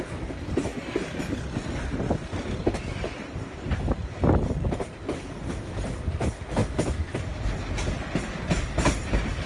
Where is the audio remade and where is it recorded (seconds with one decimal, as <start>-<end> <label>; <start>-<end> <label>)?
0.0-6.6 recorded; 6.6-7.5 remade; 7.5-9.5 recorded